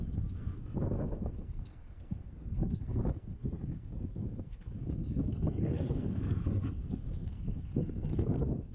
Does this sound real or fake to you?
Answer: fake